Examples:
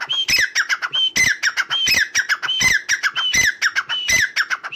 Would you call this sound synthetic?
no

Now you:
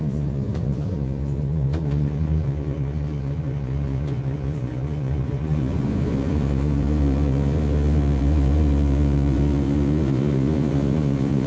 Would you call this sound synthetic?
yes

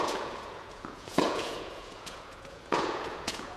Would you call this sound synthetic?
yes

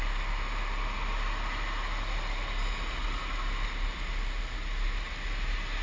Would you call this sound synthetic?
no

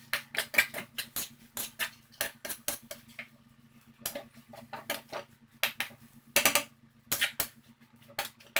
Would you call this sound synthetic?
no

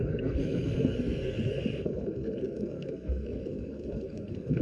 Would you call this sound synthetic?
yes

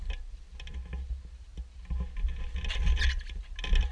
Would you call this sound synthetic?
no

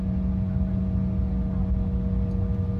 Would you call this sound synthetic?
no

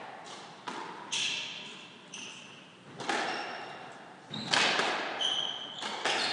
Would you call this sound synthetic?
no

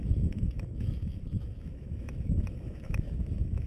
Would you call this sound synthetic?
yes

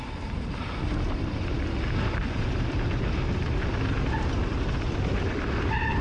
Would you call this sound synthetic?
no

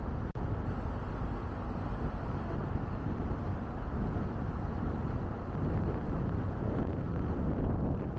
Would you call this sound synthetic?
no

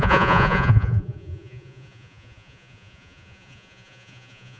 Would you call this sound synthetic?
yes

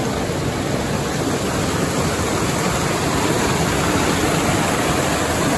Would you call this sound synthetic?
no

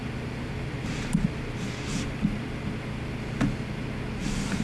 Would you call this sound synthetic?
no